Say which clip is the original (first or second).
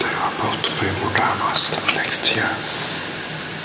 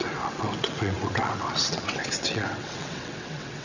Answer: first